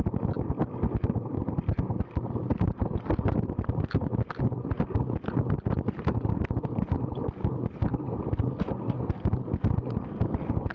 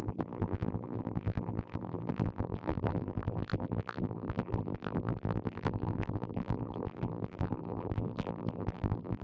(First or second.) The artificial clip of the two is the second